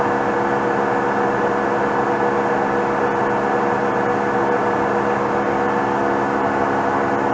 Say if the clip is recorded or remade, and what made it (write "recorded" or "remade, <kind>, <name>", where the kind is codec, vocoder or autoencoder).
recorded